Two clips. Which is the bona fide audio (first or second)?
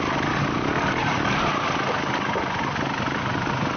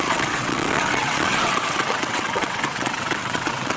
first